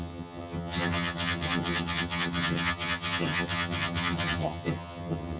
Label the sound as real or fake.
fake